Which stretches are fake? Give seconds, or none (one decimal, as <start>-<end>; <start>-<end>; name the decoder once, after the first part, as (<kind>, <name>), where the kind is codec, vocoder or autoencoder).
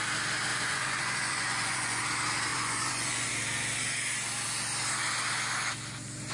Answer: 0.5-2.0 (vocoder, Vocos); 2.5-3.3